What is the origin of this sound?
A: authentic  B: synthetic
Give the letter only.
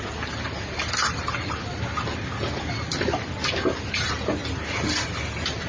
A